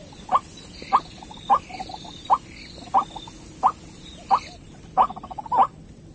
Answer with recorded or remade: recorded